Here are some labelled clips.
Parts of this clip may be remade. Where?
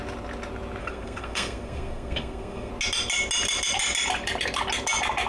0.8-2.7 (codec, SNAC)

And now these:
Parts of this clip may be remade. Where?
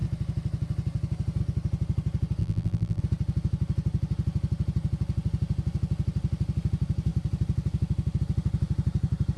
2.4-3.0 (vocoder, BigVGAN v2)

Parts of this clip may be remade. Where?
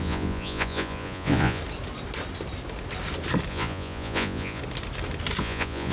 0.0-1.6 (vocoder, Vocos); 3.5-4.6; 5.4-5.9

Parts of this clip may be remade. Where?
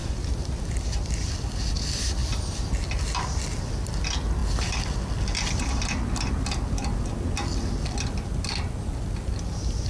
0.0-1.3 (vocoder, BigVGAN v2); 2.2-2.7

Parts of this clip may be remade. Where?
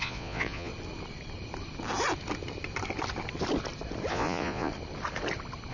0.0-0.7 (vocoder, Vocos); 4.1-4.7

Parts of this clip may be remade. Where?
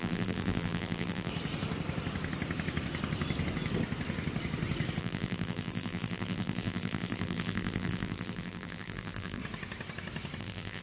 0.0-1.3 (vocoder, BigVGAN v2); 5.0-9.4; 10.4-10.8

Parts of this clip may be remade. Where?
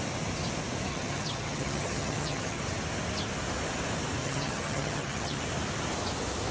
0.9-2.6 (vocoder, HiFi-GAN); 4.2-5.4